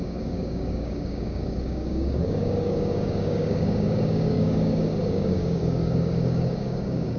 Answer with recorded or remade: remade